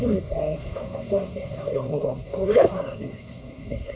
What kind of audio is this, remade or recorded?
remade